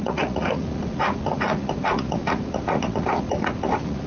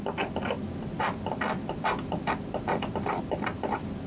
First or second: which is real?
second